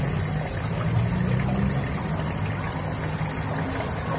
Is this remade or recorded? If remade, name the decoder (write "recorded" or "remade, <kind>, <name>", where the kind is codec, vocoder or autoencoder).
recorded